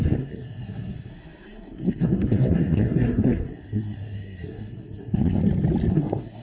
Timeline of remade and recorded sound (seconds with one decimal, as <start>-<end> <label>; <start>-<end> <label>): 0.0-5.4 remade; 5.4-5.9 recorded; 5.9-6.4 remade